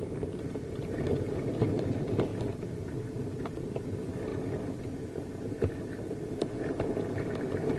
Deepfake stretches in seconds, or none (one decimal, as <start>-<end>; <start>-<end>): 0.0-2.3; 3.4-4.3; 4.8-7.8

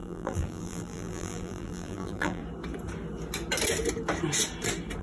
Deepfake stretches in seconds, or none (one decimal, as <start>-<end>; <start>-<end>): 0.0-2.4

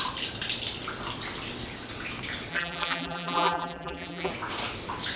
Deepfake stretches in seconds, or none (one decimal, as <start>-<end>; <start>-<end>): 2.5-4.3

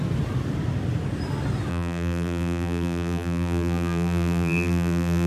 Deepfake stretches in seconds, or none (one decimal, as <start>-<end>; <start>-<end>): 1.7-5.3

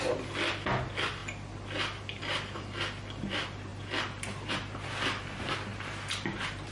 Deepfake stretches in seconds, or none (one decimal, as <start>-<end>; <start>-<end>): 3.7-4.5; 5.7-6.7

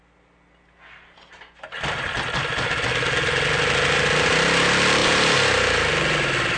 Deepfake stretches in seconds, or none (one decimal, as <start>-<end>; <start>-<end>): 5.0-5.9

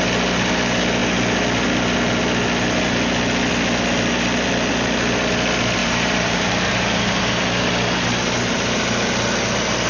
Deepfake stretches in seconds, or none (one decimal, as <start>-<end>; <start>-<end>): 5.8-7.4

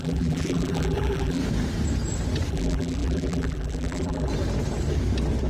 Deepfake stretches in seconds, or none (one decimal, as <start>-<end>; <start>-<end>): 0.0-1.4; 2.5-4.3